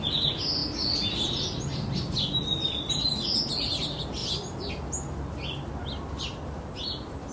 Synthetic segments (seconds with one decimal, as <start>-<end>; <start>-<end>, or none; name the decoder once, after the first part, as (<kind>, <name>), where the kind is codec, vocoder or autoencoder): none